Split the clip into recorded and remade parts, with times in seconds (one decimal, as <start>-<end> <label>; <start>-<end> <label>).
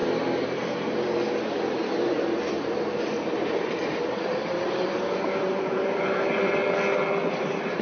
0.0-6.6 remade; 6.6-7.3 recorded; 7.3-7.8 remade